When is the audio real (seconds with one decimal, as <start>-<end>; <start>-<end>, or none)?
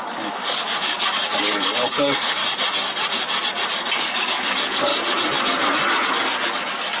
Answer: 2.4-3.5; 4.9-6.1